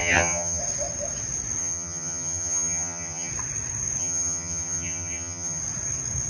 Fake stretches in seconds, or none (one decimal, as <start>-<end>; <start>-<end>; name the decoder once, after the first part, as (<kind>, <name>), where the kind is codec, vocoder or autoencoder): 0.0-0.6 (vocoder, HiFi-GAN); 1.6-3.3; 4.0-5.6